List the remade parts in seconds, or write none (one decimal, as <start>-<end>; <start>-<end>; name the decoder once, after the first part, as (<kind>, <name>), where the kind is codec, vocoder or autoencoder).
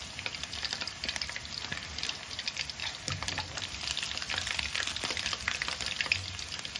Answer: none